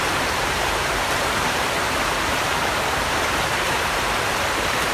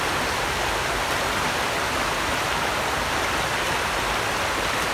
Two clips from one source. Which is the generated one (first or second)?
first